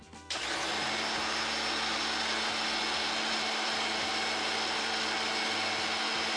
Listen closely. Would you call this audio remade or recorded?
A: recorded